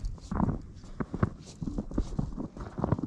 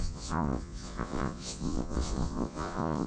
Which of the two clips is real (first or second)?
first